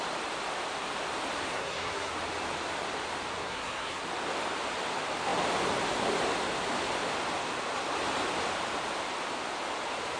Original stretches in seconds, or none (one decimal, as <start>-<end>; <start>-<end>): 0.0-1.5; 2.1-3.4; 4.0-10.2